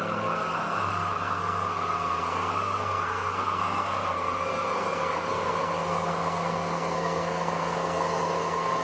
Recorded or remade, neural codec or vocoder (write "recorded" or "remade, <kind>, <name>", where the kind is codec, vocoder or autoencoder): remade, codec, SNAC